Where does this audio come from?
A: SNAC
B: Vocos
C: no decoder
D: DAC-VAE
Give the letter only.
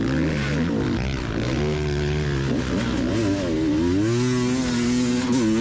C